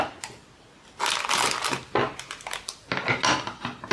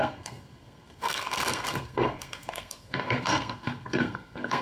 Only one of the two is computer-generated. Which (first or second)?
second